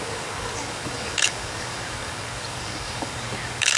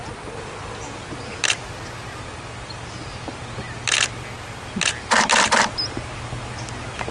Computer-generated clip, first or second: first